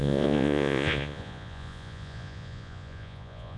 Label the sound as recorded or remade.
remade